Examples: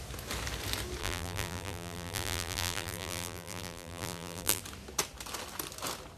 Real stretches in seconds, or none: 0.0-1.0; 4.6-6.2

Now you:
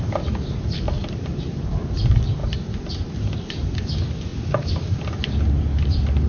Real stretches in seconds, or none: 0.0-1.0; 1.5-2.4; 2.9-6.3

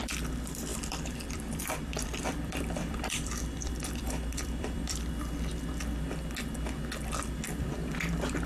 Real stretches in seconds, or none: 0.0-0.7; 5.1-8.5

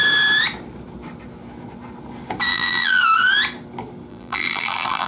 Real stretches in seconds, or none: 0.0-2.5; 3.0-4.1